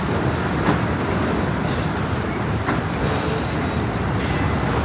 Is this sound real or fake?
real